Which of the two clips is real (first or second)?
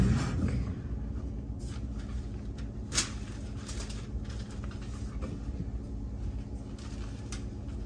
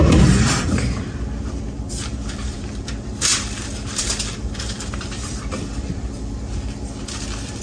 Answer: first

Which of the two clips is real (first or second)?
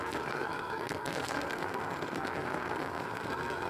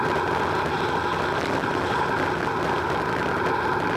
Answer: second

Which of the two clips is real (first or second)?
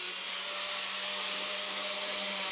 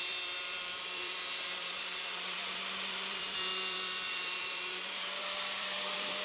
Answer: first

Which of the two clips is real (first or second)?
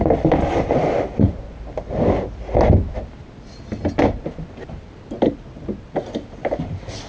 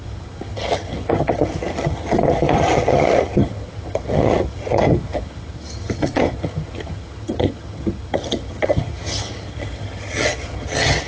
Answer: first